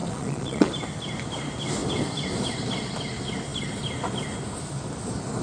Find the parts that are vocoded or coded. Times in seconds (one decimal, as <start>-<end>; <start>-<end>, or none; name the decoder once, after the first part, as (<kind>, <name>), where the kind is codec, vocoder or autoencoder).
0.0-0.7 (vocoder, Vocos)